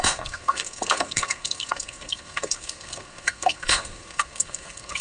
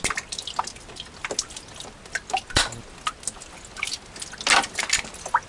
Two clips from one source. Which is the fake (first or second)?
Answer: first